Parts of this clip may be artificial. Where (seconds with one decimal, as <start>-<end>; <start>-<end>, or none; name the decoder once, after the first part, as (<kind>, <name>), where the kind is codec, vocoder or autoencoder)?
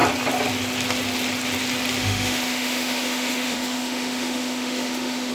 2.0-5.3 (autoencoder, DAC-VAE)